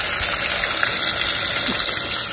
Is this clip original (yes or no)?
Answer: yes